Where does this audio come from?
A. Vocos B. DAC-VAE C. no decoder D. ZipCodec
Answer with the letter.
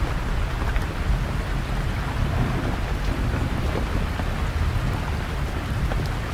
C